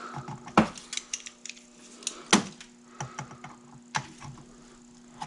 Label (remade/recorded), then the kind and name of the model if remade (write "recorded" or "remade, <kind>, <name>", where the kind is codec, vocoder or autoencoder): recorded